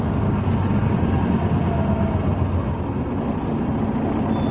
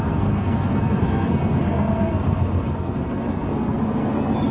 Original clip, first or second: first